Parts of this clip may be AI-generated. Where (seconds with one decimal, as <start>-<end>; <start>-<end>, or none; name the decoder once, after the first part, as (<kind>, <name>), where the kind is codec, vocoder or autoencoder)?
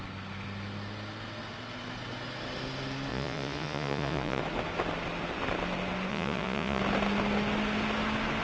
3.1-4.4 (vocoder, Vocos); 6.1-6.8